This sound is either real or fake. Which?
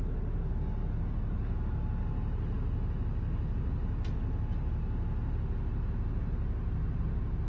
real